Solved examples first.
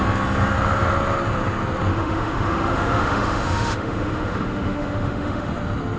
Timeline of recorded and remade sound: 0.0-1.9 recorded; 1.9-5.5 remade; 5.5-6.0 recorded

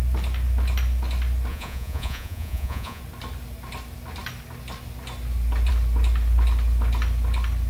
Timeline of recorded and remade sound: 0.0-1.5 recorded; 1.5-3.0 remade; 3.0-7.7 recorded

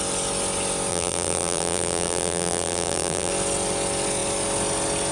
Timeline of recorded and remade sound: 0.0-0.9 recorded; 0.9-3.3 remade; 3.3-5.1 recorded

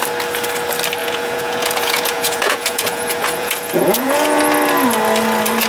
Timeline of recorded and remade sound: 0.0-1.0 recorded; 1.0-4.4 remade; 4.4-5.7 recorded

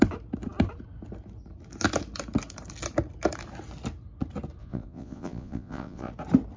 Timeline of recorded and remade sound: 0.0-4.6 recorded; 4.6-6.1 remade; 6.1-6.6 recorded

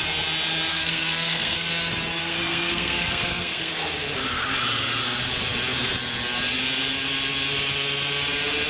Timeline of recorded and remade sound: 0.0-0.7 recorded; 0.7-1.7 remade; 1.7-2.2 recorded; 2.2-3.7 remade; 3.7-8.7 recorded

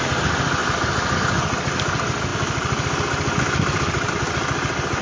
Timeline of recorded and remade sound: 0.0-5.0 recorded